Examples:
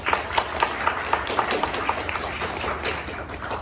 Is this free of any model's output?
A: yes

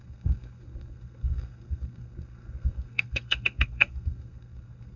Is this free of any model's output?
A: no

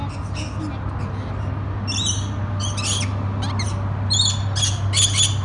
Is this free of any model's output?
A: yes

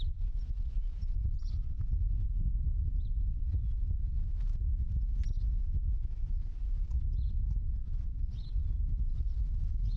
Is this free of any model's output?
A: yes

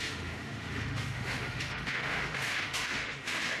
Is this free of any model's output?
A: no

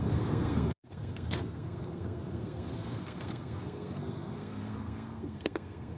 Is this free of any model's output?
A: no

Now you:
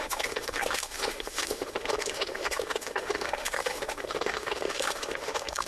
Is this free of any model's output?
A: no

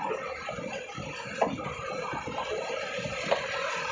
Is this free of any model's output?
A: yes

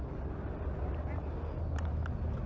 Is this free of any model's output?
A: yes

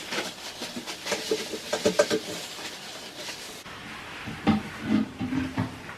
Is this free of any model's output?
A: yes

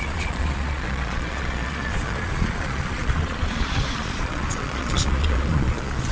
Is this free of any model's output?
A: no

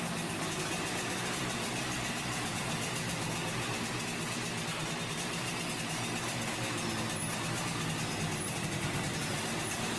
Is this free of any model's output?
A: yes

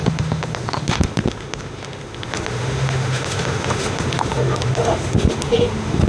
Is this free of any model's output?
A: no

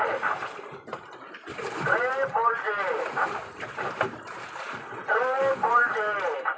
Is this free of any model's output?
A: no